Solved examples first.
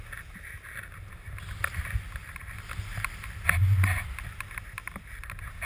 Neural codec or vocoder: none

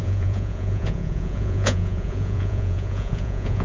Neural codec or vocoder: vocoder, Vocos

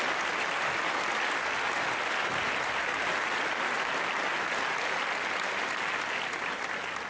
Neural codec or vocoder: none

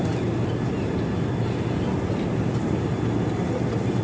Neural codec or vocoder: none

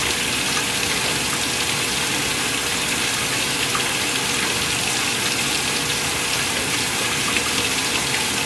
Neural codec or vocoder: none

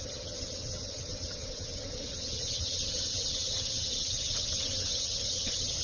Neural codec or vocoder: vocoder, HiFi-GAN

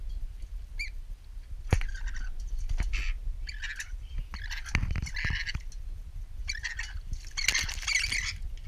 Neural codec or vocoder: none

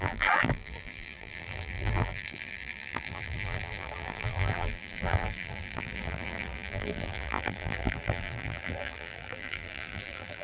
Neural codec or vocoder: vocoder, BigVGAN v2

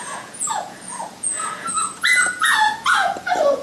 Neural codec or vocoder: vocoder, Vocos